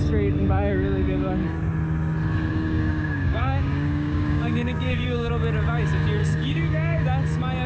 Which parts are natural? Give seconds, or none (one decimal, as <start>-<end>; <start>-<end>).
0.0-0.4; 1.3-2.5; 5.3-6.2; 7.0-7.7